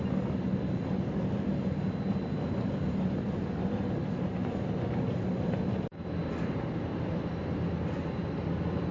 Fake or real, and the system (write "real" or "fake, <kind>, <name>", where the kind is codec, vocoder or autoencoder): real